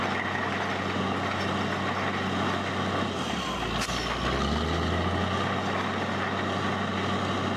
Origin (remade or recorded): recorded